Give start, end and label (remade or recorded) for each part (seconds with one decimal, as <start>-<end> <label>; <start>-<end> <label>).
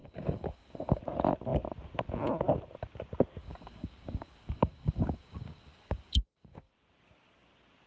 0.0-1.0 remade; 1.0-3.4 recorded; 3.4-6.7 remade; 6.7-7.9 recorded